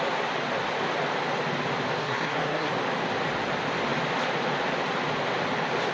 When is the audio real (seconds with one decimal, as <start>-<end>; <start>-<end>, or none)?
0.0-2.0; 2.7-5.9